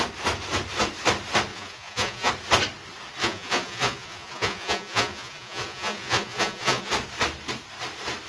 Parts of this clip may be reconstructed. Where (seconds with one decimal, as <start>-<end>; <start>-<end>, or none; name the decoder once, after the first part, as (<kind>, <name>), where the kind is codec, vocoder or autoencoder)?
1.5-2.3 (vocoder, Vocos); 3.2-6.9